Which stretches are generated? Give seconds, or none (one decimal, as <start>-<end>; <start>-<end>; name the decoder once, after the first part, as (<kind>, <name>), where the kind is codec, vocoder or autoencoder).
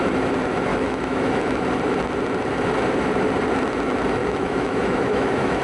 0.7-1.6 (autoencoder, DAC-VAE); 4.2-5.6